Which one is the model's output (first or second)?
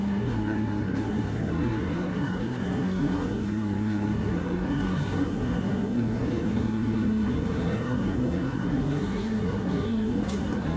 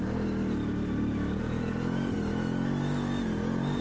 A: first